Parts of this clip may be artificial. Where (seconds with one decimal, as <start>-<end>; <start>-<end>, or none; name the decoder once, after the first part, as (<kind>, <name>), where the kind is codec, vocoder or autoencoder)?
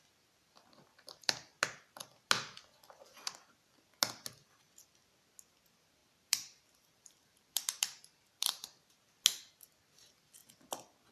6.0-9.0 (vocoder, BigVGAN v2)